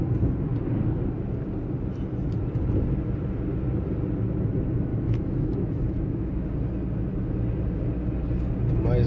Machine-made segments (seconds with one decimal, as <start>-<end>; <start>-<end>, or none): 4.9-6.5